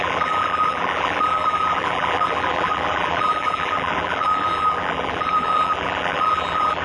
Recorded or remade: remade